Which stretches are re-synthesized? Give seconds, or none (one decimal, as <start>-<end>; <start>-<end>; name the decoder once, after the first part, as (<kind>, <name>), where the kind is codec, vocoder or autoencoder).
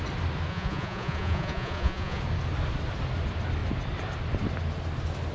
0.5-2.2 (vocoder, Vocos)